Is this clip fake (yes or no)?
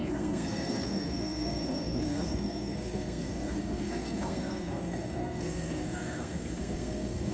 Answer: yes